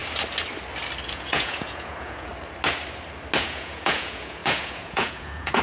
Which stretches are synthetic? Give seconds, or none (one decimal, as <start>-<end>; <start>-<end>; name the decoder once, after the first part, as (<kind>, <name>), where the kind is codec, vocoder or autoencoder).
1.1-2.3 (vocoder, Vocos); 3.4-5.6